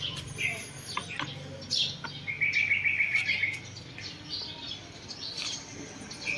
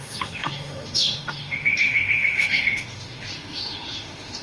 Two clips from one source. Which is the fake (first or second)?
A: second